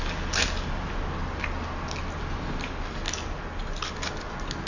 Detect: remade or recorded recorded